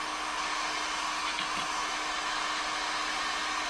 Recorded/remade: recorded